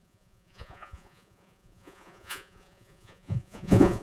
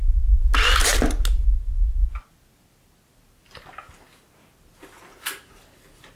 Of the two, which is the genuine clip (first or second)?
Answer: second